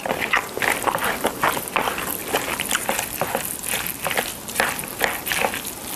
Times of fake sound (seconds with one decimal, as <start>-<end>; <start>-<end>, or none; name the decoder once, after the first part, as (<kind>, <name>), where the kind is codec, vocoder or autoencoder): none